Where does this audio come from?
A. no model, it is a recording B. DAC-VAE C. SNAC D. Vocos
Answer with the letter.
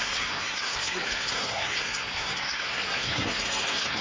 C